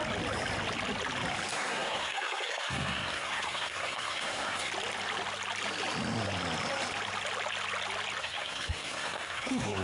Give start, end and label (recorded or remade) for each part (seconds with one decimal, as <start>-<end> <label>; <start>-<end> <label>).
0.0-1.5 recorded; 1.5-4.7 remade; 4.7-8.2 recorded; 8.2-9.8 remade